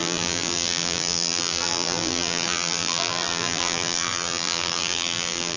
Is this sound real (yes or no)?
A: no